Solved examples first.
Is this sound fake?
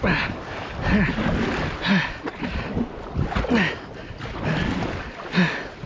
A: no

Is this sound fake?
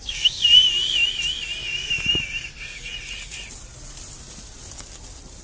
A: no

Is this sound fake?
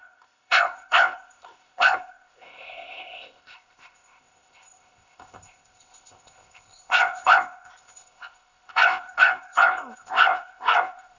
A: yes